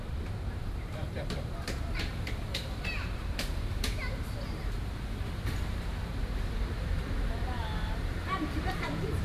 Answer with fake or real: fake